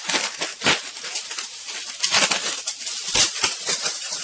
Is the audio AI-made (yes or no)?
no